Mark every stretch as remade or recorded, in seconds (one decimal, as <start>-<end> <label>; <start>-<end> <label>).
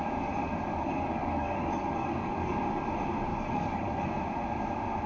0.0-0.7 recorded; 0.7-2.6 remade; 2.6-3.3 recorded; 3.3-4.0 remade; 4.0-5.1 recorded